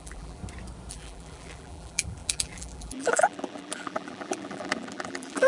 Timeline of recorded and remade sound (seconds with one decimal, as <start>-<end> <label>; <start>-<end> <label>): 0.0-0.4 remade; 0.4-0.9 recorded; 0.9-5.5 remade